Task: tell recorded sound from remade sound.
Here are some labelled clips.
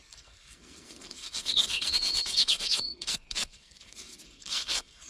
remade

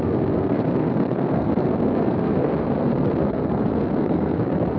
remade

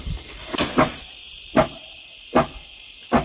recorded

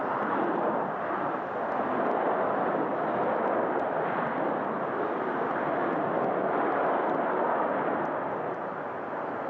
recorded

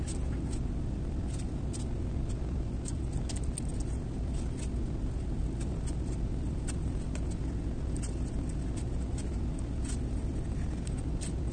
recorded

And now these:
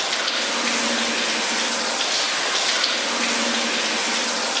recorded